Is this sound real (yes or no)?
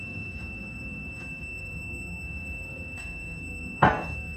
no